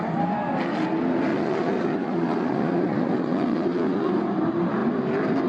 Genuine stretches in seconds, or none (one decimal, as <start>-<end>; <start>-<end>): 0.0-1.3; 4.1-5.5